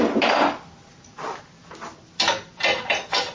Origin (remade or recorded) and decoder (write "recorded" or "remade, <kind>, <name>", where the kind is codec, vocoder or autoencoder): recorded